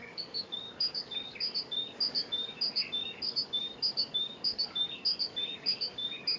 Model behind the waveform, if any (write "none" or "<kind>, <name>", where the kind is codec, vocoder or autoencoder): codec, DAC